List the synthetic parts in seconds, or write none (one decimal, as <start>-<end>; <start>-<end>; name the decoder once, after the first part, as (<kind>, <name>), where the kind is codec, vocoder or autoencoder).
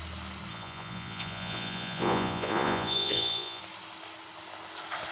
0.5-3.6 (vocoder, Vocos)